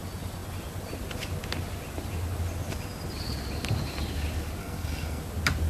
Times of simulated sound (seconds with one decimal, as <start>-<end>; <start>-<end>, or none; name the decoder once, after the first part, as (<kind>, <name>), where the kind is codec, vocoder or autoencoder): 4.6-5.2 (codec, SNAC)